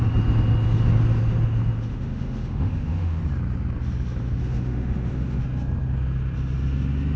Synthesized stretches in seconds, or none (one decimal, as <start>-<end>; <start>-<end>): 1.9-3.2; 4.4-5.4